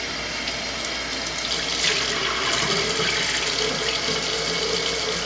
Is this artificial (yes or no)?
no